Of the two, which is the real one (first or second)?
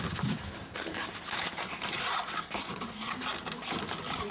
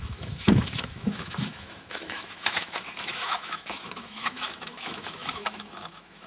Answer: first